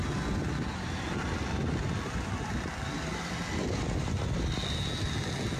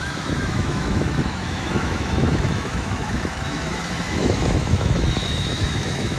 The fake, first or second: second